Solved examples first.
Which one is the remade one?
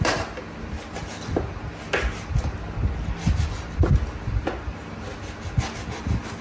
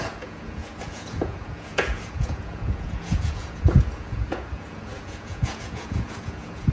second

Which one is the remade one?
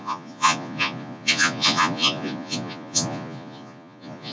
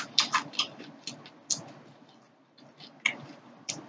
first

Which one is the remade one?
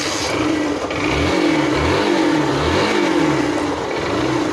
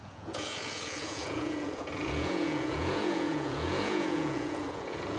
second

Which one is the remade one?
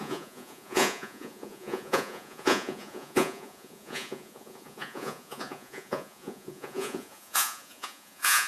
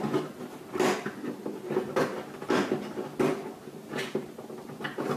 first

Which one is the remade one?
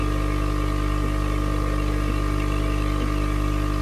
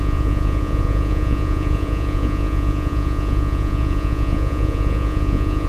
second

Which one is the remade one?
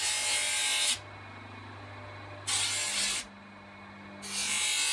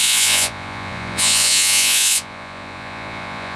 second